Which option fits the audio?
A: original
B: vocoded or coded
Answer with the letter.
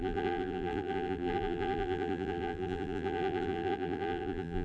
B